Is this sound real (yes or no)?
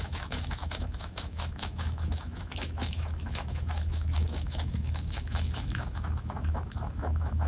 no